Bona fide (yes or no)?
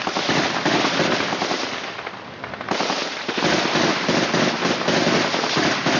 yes